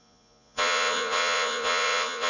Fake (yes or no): yes